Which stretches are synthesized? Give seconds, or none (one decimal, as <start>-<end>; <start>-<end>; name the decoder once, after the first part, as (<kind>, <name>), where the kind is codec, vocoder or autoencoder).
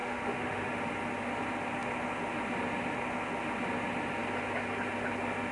0.0-0.7 (autoencoder, DAC-VAE)